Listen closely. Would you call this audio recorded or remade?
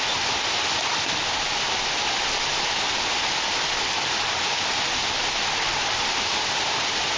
recorded